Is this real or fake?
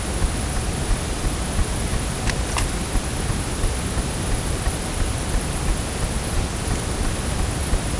real